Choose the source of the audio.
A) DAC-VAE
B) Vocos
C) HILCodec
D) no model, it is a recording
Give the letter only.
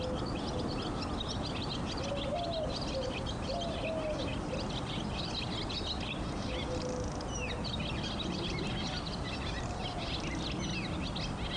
D